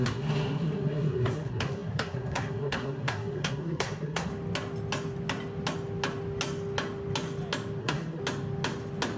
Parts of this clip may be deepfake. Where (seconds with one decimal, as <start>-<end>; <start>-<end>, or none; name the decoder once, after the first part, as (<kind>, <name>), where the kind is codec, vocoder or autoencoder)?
0.0-4.3 (codec, SNAC); 7.8-8.2